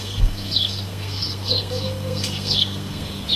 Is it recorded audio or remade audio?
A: remade